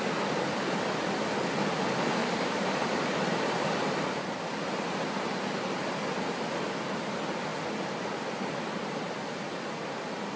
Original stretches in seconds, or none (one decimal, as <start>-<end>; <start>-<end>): 0.0-2.2; 3.9-10.4